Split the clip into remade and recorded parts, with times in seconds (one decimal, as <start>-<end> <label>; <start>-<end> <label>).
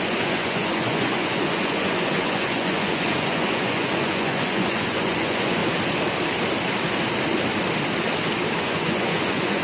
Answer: 0.0-5.6 remade; 5.6-8.6 recorded; 8.6-9.6 remade